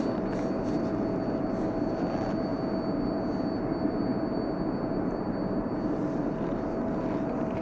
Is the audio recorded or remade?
recorded